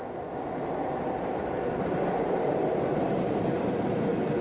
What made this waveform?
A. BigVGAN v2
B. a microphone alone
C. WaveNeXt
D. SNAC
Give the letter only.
A